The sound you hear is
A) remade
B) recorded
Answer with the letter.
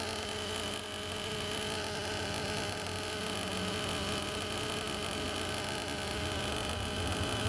B